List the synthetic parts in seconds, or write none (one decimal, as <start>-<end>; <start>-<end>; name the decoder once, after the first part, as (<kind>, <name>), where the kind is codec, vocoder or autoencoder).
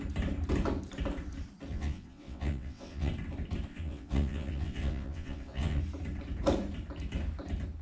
1.7-3.1 (vocoder, WaveNeXt); 3.7-5.8